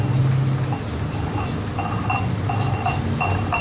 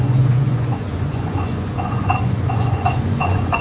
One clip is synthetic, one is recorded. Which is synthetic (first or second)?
second